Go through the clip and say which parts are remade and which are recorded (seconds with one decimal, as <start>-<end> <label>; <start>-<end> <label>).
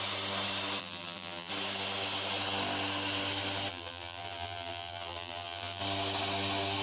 0.0-0.8 recorded; 0.8-1.5 remade; 1.5-3.7 recorded; 3.7-5.8 remade; 5.8-6.8 recorded